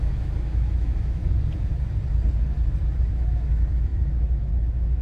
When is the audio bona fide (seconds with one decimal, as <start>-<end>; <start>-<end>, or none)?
1.2-3.0